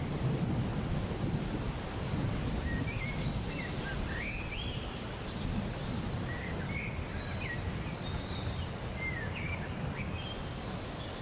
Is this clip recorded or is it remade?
recorded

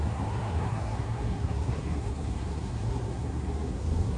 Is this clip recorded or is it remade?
remade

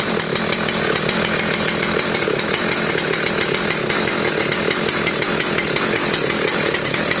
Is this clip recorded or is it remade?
recorded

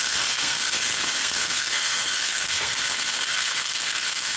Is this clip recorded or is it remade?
remade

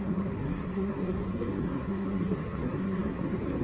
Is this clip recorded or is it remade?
remade